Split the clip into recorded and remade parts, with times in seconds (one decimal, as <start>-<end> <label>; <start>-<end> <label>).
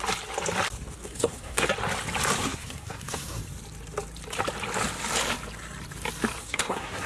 0.0-1.0 recorded; 1.0-1.7 remade; 1.7-2.5 recorded; 2.5-3.4 remade; 3.4-6.4 recorded; 6.4-7.1 remade